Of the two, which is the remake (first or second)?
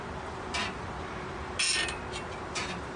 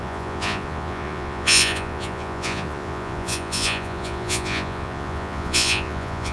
second